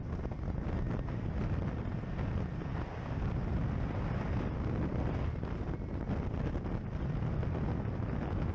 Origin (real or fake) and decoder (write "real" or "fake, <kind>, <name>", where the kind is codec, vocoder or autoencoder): real